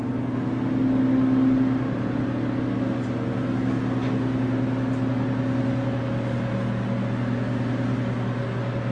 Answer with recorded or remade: recorded